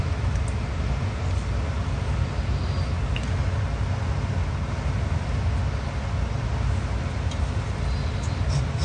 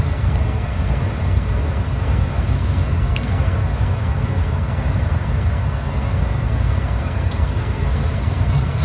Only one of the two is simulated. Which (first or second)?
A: second